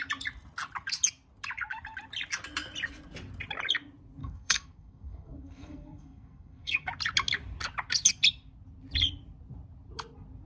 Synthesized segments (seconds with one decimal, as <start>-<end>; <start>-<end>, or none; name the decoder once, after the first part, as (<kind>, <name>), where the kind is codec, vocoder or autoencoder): 4.2-6.9 (codec, SNAC)